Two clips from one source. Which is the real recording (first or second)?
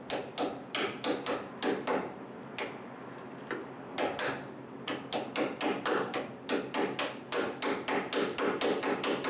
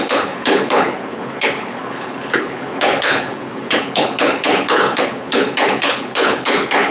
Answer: first